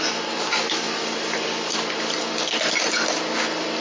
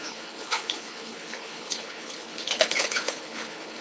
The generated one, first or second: second